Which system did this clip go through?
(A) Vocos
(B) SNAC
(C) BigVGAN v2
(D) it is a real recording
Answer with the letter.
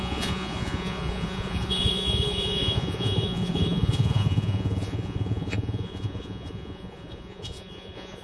A